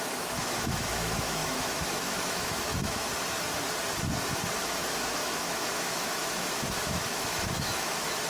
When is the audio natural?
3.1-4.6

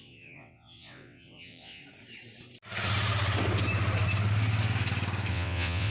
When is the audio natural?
1.8-5.3